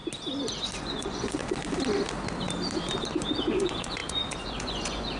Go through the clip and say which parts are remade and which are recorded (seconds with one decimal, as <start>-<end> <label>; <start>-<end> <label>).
0.0-0.8 recorded; 0.8-1.4 remade; 1.4-3.4 recorded; 3.4-5.2 remade